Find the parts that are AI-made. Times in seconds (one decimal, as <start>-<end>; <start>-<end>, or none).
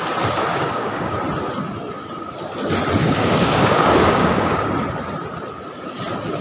0.5-1.2; 3.0-4.7